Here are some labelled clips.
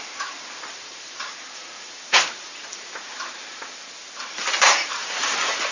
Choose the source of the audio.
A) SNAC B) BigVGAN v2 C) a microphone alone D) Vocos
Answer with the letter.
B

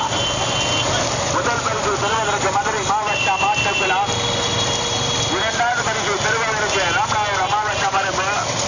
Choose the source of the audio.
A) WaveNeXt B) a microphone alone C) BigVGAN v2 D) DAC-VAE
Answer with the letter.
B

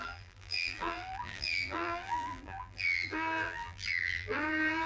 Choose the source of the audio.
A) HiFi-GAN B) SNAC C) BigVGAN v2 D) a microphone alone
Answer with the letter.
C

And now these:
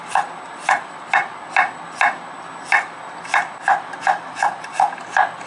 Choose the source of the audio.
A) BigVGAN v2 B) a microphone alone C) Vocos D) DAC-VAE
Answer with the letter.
B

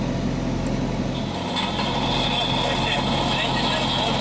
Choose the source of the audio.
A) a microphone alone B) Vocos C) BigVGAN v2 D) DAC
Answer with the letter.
A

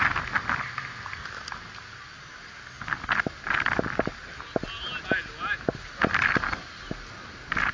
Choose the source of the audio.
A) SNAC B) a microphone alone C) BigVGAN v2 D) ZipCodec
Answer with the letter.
B